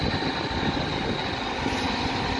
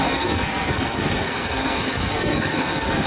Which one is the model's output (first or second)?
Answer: second